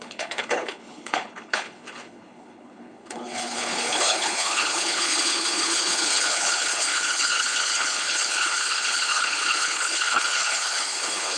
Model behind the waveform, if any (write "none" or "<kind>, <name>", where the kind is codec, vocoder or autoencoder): codec, HILCodec